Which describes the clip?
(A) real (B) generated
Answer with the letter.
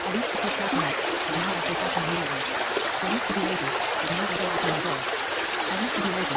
A